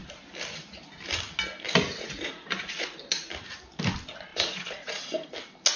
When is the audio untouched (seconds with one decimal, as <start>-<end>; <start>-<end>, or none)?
0.0-1.9; 3.3-4.3; 5.0-5.8